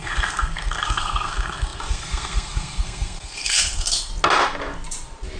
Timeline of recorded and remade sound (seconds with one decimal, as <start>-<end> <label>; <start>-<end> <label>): 0.0-4.1 remade; 4.1-5.4 recorded